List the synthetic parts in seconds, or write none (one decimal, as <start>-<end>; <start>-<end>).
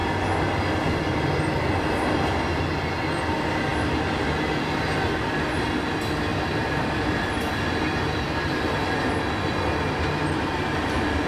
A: 6.3-9.3